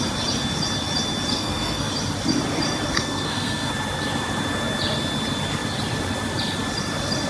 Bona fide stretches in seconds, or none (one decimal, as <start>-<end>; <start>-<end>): 0.0-1.3; 1.9-2.9; 3.7-7.3